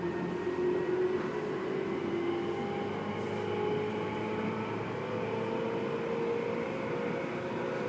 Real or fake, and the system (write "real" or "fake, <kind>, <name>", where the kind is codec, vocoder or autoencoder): real